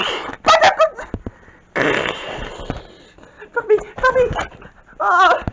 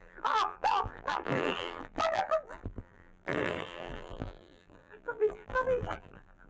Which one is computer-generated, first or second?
second